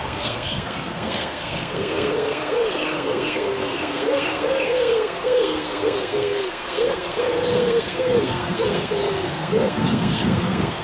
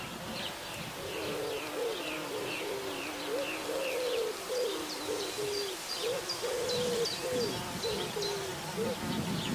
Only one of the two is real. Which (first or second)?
second